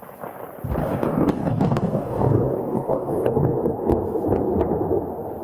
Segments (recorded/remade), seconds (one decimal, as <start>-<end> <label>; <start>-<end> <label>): 0.0-0.8 recorded; 0.8-4.0 remade; 4.0-5.4 recorded